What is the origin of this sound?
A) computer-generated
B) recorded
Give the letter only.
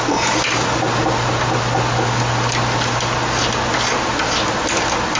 B